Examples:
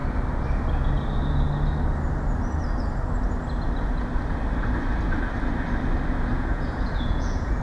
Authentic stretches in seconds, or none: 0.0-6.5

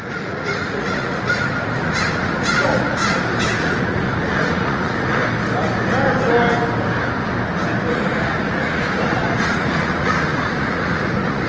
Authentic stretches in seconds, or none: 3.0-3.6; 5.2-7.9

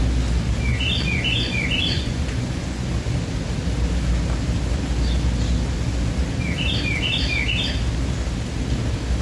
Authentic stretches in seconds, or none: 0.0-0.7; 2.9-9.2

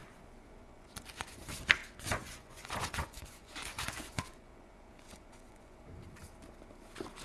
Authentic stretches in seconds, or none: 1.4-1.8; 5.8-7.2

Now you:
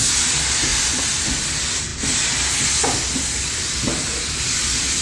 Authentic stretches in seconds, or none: 0.0-5.0

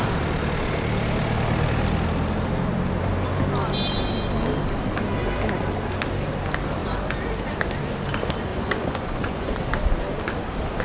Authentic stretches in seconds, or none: 0.0-8.5; 9.6-10.8